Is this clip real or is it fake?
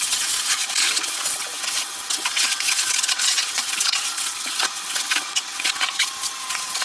fake